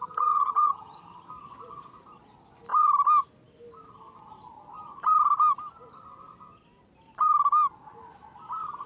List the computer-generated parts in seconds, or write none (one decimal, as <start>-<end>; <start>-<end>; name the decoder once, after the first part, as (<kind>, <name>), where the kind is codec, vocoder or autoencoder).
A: 0.0-1.3 (vocoder, HiFi-GAN)